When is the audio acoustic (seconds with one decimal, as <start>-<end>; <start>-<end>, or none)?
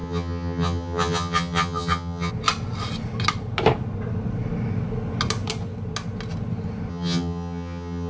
2.3-6.9